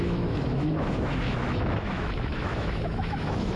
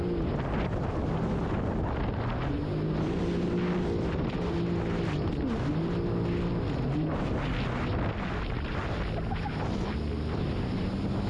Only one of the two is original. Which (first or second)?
second